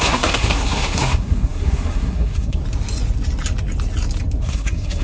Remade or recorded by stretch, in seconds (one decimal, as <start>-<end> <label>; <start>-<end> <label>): 0.0-2.6 remade; 2.6-4.4 recorded; 4.4-5.0 remade